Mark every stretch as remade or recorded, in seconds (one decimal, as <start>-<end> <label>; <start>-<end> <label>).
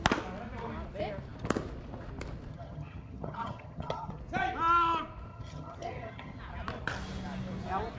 0.0-2.5 recorded; 2.5-4.2 remade; 4.2-5.3 recorded; 5.3-6.4 remade; 6.4-8.0 recorded